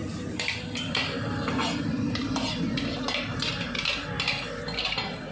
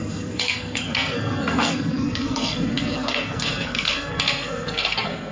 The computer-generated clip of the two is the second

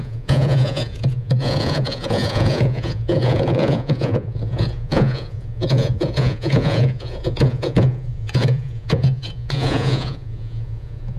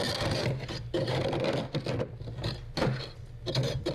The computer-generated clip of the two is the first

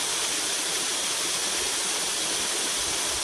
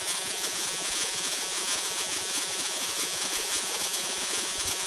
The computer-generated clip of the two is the second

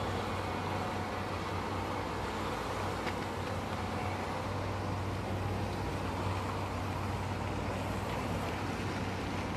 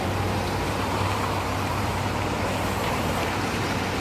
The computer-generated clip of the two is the second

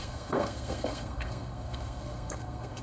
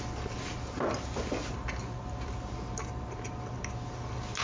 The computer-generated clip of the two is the first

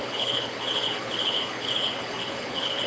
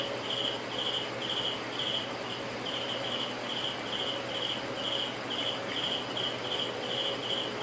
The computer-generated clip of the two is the first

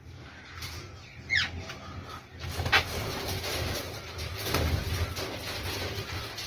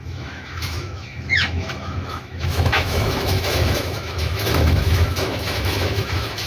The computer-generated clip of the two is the second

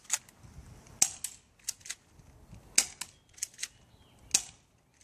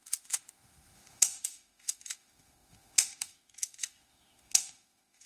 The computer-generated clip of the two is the second